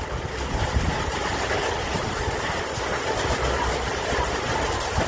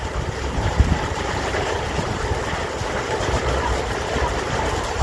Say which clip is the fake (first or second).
second